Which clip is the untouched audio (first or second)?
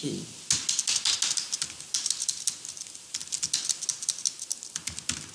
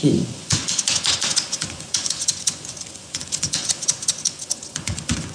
first